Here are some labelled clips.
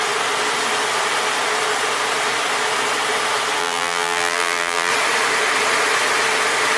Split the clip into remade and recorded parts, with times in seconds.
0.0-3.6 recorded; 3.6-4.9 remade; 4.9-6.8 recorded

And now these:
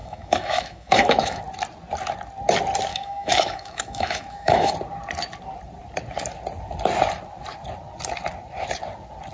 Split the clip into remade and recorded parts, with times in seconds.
0.0-1.4 remade; 1.4-2.9 recorded; 2.9-4.7 remade; 4.7-9.3 recorded